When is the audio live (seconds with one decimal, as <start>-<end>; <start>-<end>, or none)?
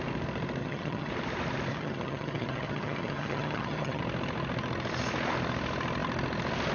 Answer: 0.0-0.6; 1.1-1.7; 4.0-6.7